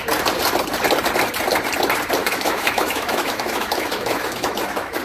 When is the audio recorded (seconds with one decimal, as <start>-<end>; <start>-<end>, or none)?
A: 0.0-2.2